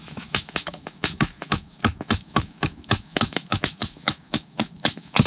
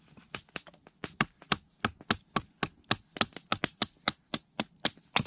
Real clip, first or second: second